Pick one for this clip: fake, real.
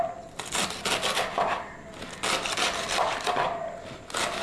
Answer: real